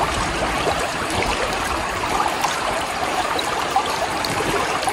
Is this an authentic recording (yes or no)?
no